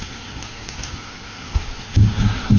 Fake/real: fake